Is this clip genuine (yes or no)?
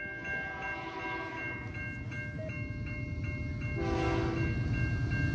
yes